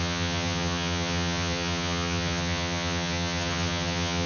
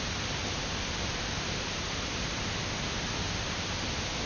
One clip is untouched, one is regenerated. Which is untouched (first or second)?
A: second